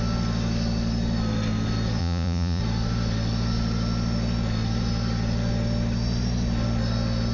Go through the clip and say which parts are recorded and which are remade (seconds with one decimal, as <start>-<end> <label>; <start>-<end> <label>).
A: 0.0-2.0 recorded; 2.0-2.6 remade; 2.6-7.3 recorded